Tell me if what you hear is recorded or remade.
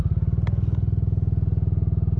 recorded